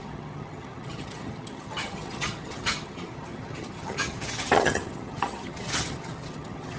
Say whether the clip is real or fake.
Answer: fake